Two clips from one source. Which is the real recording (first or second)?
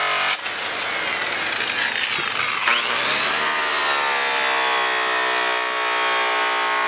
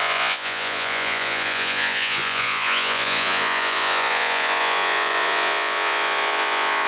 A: first